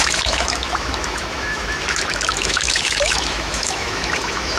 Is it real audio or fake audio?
fake